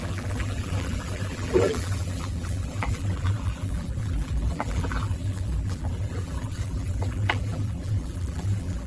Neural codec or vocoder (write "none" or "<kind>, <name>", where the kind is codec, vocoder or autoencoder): vocoder, BigVGAN v2